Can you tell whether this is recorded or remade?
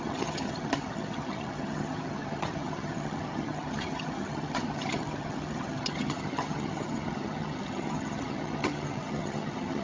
remade